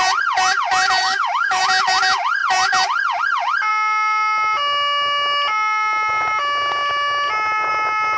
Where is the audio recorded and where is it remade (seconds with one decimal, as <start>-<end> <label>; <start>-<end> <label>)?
0.0-1.0 recorded; 1.0-1.6 remade; 1.6-8.2 recorded